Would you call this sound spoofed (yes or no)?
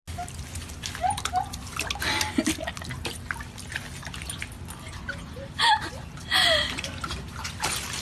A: no